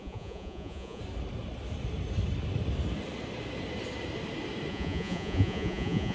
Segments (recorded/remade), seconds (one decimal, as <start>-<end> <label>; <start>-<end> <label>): 0.0-1.0 remade; 1.0-4.7 recorded; 4.7-6.1 remade